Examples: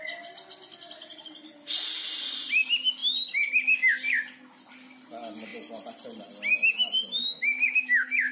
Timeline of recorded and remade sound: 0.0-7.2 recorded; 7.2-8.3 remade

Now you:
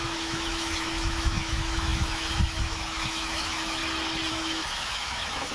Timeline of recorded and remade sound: 0.0-3.8 remade; 3.8-4.3 recorded; 4.3-5.5 remade

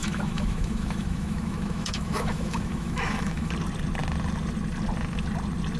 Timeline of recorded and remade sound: 0.0-3.5 remade; 3.5-5.8 recorded

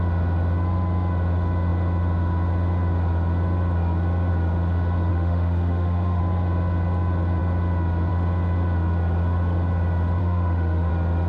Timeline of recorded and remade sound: 0.0-5.1 recorded; 5.1-6.2 remade; 6.2-10.2 recorded; 10.2-10.9 remade; 10.9-11.3 recorded

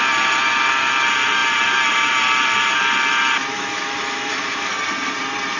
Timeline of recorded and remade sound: 0.0-3.5 recorded; 3.5-4.7 remade; 4.7-5.6 recorded

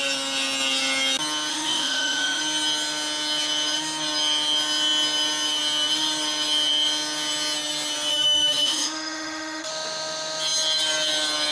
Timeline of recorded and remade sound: 0.0-1.5 recorded; 1.5-2.4 remade; 2.4-8.1 recorded; 8.1-9.7 remade; 9.7-11.5 recorded